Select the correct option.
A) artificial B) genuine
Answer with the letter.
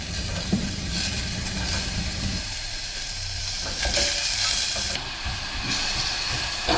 B